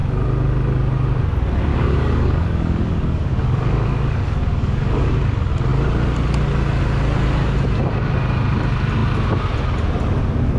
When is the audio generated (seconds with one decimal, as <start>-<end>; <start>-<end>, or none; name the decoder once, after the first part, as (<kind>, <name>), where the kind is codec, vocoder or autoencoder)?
1.7-5.1 (codec, DAC)